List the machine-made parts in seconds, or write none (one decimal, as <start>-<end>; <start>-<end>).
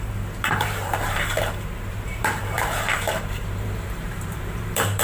0.0-5.0